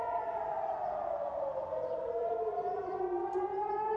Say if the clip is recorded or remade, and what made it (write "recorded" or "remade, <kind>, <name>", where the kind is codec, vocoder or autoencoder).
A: remade, vocoder, BigVGAN v2